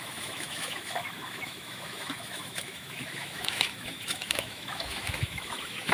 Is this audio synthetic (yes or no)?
yes